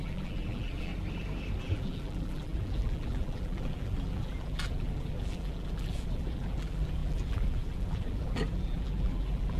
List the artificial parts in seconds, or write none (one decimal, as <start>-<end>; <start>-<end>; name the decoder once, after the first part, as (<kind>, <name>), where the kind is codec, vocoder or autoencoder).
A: 0.0-0.9 (vocoder, BigVGAN v2); 1.6-9.6